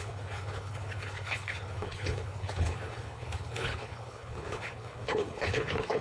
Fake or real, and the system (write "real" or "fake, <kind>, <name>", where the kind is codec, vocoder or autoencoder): fake, codec, HILCodec